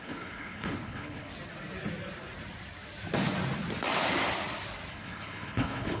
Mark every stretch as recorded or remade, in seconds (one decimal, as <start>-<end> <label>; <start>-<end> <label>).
0.0-1.3 remade; 1.3-4.9 recorded; 4.9-6.0 remade